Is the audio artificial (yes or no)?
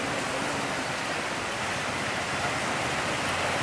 no